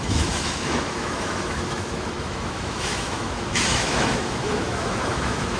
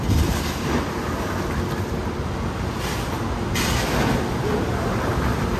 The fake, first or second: first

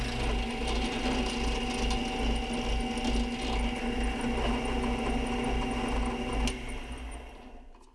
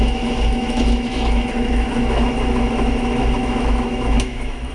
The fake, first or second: second